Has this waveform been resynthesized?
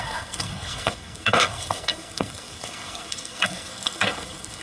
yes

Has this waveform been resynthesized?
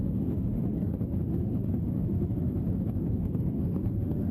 yes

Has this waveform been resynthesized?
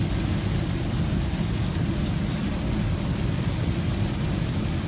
no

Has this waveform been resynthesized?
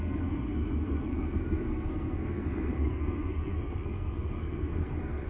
yes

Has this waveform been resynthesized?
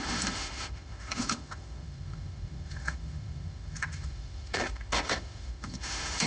yes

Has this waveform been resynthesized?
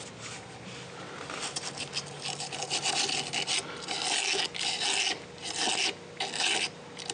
no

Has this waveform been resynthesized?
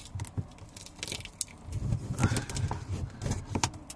no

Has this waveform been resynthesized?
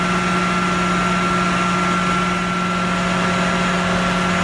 no